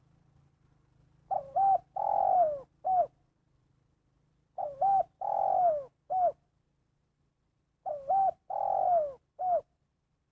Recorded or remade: recorded